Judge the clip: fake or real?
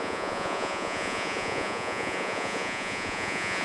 fake